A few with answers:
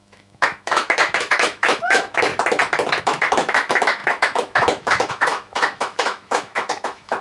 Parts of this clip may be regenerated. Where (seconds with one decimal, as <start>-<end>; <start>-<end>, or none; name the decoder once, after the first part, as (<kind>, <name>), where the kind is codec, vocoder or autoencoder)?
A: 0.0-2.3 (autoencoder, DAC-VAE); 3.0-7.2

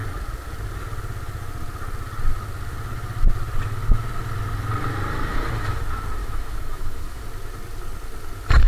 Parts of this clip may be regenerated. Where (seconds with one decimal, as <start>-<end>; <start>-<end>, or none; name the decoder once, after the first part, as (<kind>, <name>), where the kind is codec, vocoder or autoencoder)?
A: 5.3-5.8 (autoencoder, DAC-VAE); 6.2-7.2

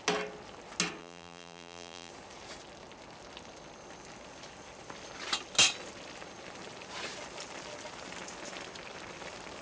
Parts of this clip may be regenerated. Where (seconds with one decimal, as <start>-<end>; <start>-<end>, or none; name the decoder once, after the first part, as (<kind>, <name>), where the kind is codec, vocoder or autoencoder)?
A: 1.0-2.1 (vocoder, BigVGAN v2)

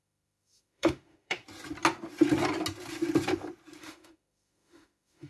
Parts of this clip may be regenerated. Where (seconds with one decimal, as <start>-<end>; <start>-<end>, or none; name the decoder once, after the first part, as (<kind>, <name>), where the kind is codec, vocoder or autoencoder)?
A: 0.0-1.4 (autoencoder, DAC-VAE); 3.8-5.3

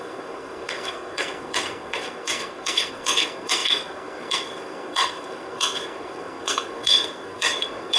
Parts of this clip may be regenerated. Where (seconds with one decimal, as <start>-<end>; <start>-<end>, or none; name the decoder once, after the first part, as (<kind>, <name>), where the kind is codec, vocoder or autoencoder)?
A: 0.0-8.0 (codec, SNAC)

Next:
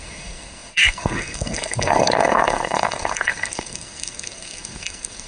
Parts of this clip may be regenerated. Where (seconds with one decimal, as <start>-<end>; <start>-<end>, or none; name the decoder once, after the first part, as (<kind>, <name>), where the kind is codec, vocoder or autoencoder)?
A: 0.0-5.3 (codec, SNAC)